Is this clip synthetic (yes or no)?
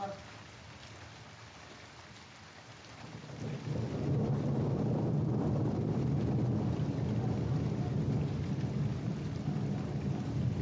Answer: no